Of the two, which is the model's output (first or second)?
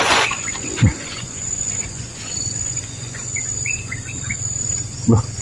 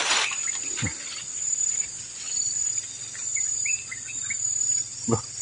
first